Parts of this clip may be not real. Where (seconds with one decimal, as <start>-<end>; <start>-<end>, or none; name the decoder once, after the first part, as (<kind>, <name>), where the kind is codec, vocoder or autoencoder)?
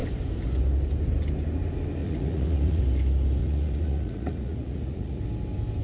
2.0-2.8 (vocoder, Vocos); 3.4-5.2